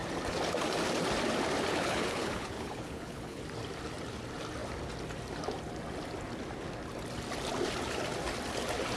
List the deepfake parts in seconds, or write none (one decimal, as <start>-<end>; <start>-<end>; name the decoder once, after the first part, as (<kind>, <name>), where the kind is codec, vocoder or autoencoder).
1.7-3.4 (codec, HILCodec)